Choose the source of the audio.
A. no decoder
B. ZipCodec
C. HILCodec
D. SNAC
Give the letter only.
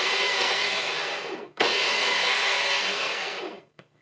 D